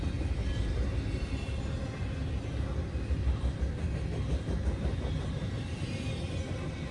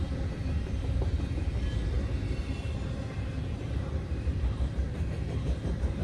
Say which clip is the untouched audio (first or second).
first